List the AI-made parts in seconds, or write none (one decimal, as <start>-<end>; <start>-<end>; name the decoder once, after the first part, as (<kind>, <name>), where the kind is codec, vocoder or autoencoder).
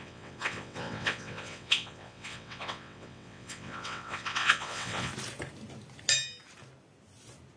0.0-5.1 (vocoder, WaveNeXt)